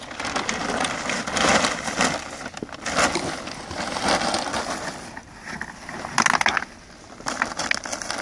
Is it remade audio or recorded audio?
recorded